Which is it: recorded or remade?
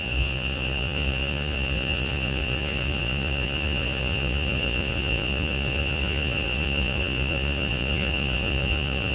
remade